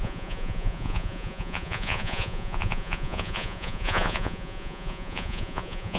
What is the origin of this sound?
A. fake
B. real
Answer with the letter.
A